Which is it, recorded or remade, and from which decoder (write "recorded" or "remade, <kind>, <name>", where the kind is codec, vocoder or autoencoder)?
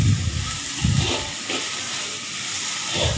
recorded